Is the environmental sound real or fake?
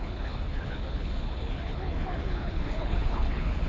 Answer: fake